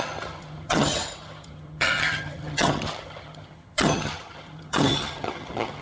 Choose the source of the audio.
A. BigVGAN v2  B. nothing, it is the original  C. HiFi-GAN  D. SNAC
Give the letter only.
C